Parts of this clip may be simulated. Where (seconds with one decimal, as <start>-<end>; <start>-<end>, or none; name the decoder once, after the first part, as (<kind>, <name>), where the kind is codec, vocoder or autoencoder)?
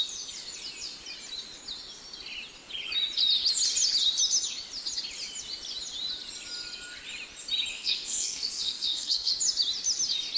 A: 7.7-9.3 (codec, SNAC)